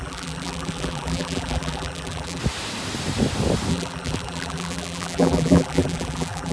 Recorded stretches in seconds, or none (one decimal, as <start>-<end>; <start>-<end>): 2.4-3.7